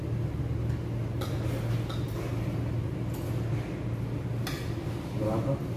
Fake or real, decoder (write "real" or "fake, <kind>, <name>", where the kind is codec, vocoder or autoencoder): real